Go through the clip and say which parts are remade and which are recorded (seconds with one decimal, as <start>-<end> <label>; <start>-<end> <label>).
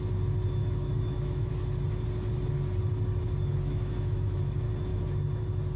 0.0-0.6 recorded; 0.6-1.5 remade; 1.5-3.5 recorded; 3.5-4.4 remade; 4.4-5.8 recorded